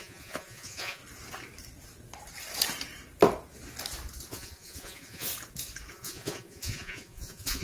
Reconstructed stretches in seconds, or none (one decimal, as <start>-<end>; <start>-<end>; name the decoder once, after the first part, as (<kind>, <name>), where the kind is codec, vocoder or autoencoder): 0.0-1.0 (vocoder, Vocos); 4.3-5.3; 5.9-7.6